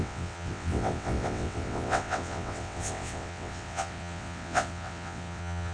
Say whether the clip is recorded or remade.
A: remade